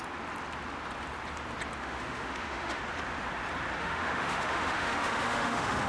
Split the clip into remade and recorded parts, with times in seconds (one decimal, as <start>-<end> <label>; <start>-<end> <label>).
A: 0.0-1.8 recorded; 1.8-2.8 remade; 2.8-3.8 recorded; 3.8-5.9 remade